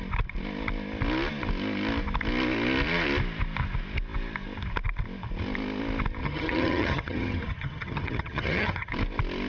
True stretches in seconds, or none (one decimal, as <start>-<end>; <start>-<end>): 0.0-6.2; 8.9-9.5